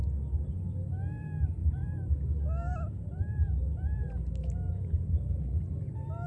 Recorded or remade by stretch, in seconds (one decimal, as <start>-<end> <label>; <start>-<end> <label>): 0.0-1.6 recorded; 1.6-5.4 remade; 5.4-6.3 recorded